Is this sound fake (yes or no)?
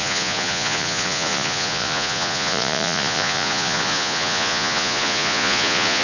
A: yes